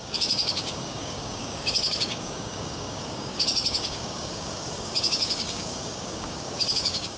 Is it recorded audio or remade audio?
remade